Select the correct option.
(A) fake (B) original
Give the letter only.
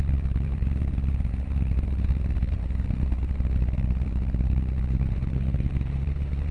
A